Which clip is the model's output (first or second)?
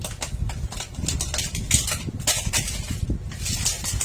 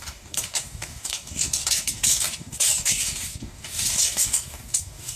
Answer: second